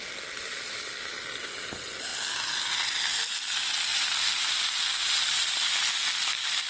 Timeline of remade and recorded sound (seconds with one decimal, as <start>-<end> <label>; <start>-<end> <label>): 0.0-3.9 recorded; 3.9-4.6 remade; 4.6-5.0 recorded; 5.0-5.7 remade; 5.7-6.7 recorded